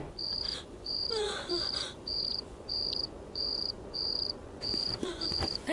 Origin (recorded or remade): remade